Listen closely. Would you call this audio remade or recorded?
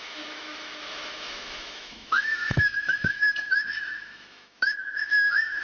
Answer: remade